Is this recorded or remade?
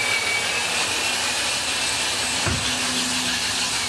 recorded